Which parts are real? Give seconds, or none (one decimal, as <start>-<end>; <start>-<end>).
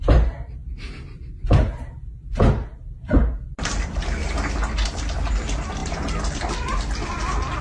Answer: 0.0-7.6